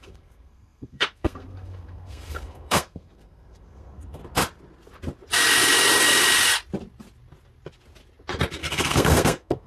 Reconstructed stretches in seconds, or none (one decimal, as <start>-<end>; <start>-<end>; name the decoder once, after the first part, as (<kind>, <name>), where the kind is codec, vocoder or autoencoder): 0.0-4.2 (codec, SNAC); 8.6-9.7